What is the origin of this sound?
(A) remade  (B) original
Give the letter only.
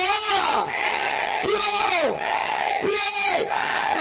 A